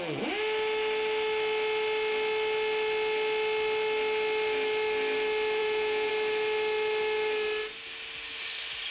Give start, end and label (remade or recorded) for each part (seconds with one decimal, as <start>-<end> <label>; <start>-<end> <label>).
0.0-5.6 recorded; 5.6-6.1 remade; 6.1-8.9 recorded